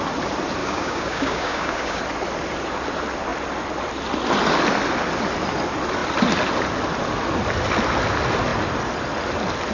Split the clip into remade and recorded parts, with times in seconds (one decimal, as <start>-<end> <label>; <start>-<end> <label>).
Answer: 0.0-0.6 recorded; 0.6-2.0 remade; 2.0-9.7 recorded